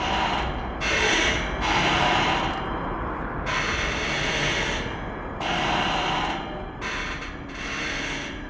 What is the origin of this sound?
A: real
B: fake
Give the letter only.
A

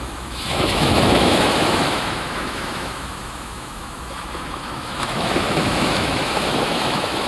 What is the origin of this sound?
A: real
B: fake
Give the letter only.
B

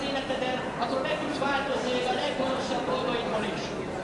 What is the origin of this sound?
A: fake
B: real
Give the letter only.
B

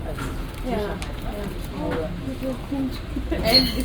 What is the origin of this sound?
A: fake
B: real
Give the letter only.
B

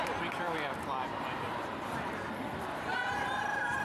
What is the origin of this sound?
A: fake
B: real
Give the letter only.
A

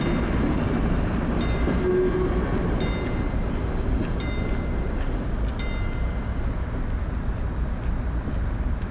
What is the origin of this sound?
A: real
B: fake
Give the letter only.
A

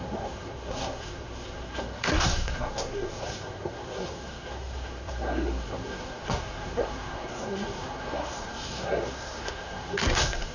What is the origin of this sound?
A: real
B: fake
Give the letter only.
B